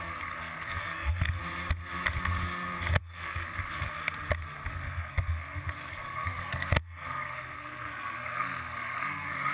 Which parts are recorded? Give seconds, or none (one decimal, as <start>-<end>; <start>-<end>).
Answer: 1.4-3.0; 4.0-4.7